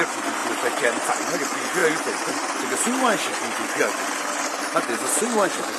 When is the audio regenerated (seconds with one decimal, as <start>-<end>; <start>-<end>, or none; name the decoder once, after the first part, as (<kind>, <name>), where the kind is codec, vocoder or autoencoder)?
3.3-3.9 (vocoder, Vocos)